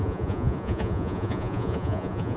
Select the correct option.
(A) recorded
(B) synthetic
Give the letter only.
B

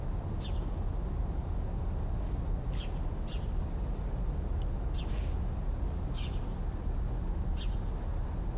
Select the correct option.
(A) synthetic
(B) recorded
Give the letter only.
B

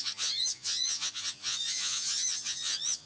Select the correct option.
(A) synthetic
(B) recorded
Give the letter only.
A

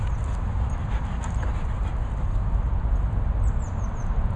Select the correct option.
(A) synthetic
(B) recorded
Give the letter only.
B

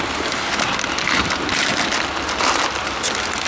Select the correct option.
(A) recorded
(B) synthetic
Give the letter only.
A